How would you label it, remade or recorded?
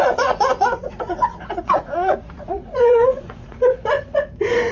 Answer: remade